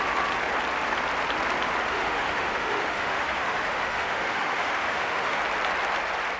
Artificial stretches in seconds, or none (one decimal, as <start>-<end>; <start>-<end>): 1.9-5.4